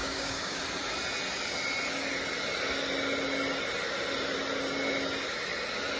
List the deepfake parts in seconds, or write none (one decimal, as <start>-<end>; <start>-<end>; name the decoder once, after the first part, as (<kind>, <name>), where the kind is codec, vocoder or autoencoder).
0.0-0.6 (codec, DAC)